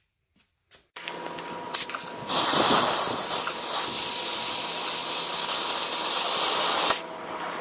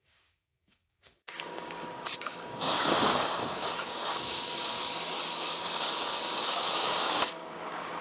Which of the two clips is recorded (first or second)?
first